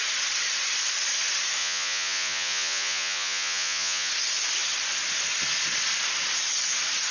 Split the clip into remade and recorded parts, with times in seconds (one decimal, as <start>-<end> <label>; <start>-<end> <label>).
0.0-1.6 recorded; 1.6-4.1 remade; 4.1-7.1 recorded